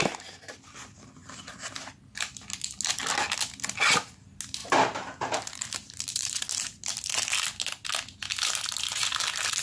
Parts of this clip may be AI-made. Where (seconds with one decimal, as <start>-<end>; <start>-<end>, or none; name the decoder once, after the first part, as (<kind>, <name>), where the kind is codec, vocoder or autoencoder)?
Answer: 4.6-6.4 (vocoder, BigVGAN v2)